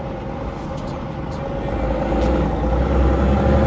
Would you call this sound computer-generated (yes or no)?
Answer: no